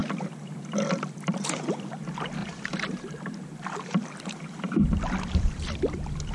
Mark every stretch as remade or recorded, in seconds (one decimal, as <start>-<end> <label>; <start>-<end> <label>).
0.0-1.9 remade; 1.9-2.4 recorded; 2.4-6.3 remade